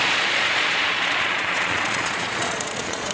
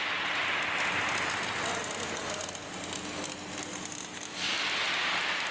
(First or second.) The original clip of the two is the second